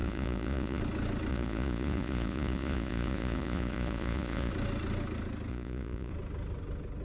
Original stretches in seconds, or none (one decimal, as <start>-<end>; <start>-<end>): 0.8-1.3; 4.5-5.5; 6.1-7.0

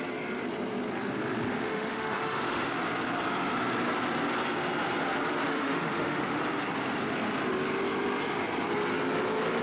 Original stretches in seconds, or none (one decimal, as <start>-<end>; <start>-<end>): 0.0-1.5; 2.7-5.5; 6.4-9.6

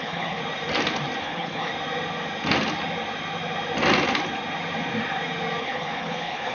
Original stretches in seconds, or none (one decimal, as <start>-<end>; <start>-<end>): 0.4-1.2; 1.7-5.6

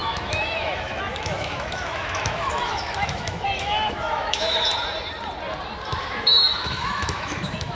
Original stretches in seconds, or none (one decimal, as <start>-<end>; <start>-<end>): 4.7-6.0

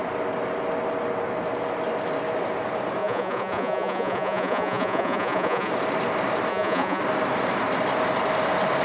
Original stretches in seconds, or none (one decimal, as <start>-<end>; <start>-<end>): 0.0-3.0; 5.7-6.5; 7.0-8.8